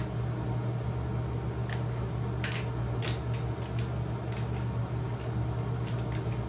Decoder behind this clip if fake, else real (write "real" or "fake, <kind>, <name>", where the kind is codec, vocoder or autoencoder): real